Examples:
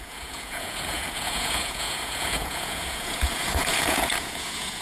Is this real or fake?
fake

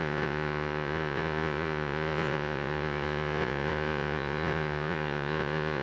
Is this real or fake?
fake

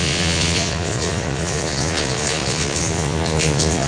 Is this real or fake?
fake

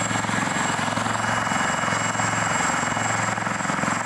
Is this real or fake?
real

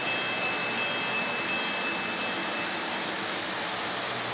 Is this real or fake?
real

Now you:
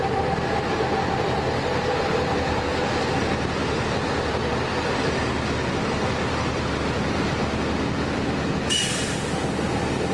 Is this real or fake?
real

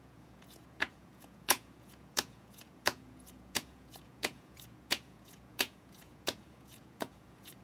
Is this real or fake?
fake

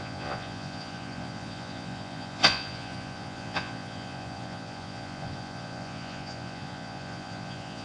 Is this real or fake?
fake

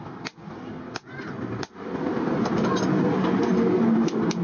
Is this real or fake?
real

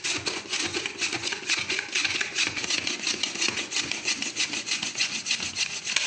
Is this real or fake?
fake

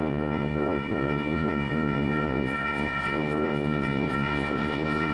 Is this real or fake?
fake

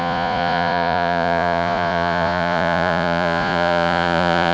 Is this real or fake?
fake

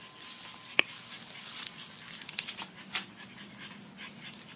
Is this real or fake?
real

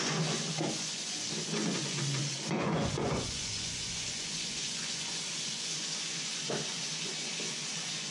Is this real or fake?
fake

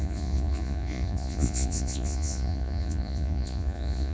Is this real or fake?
fake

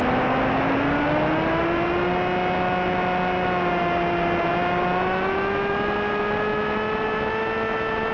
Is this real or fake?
real